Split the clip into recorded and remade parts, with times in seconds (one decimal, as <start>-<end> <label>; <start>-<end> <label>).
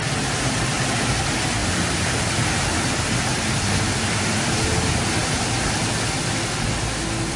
0.0-7.4 recorded